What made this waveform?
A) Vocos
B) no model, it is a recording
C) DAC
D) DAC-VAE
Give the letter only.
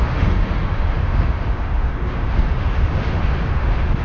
D